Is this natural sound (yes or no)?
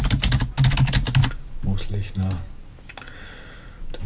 yes